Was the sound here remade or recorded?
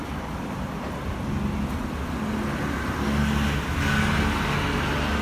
recorded